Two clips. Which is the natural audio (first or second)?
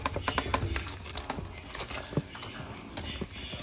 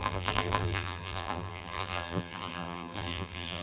first